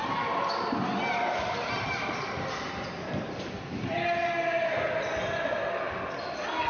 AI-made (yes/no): no